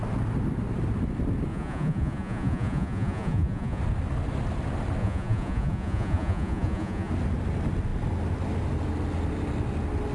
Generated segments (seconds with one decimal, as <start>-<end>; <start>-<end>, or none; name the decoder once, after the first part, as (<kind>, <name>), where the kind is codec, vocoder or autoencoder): 1.5-3.8 (vocoder, Vocos); 5.0-7.1